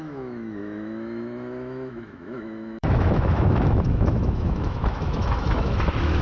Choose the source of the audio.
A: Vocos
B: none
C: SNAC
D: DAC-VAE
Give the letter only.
D